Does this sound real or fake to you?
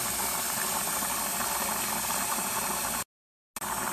real